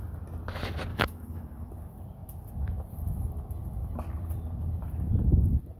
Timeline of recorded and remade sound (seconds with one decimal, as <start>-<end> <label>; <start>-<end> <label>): 0.0-0.9 recorded; 0.9-1.7 remade; 1.7-5.8 recorded